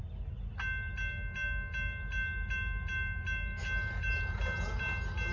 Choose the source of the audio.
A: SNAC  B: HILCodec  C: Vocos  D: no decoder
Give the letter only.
D